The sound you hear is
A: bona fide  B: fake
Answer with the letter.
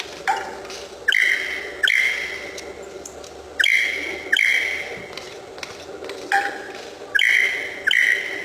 A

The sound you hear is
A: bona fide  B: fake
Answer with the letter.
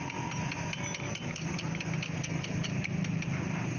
A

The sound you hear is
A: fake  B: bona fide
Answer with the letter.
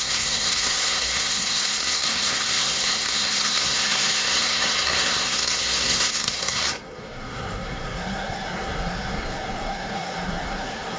A